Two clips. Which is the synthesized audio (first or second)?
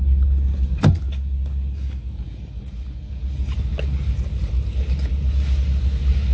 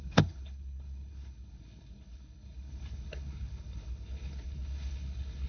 second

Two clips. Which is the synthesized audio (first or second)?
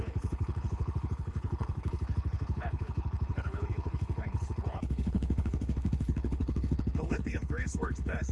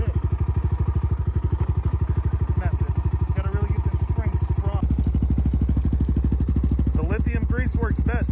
first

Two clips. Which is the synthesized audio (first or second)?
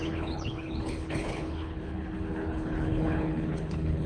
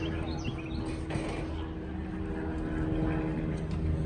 first